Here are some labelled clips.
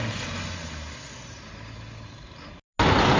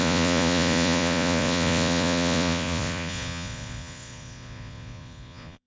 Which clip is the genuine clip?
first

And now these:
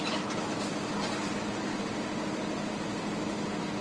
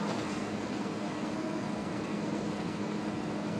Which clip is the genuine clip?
first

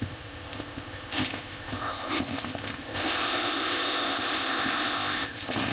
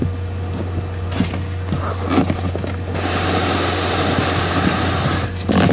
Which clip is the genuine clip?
second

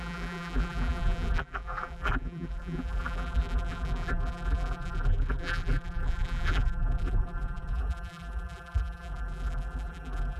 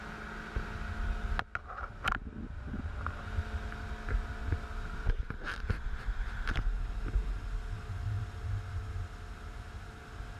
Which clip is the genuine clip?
second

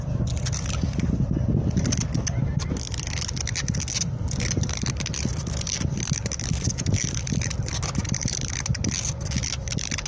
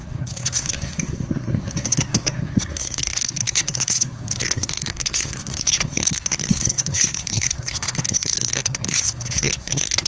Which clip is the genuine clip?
first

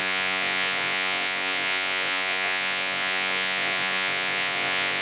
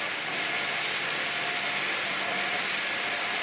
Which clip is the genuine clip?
second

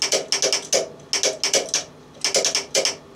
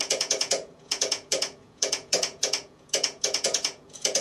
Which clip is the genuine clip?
first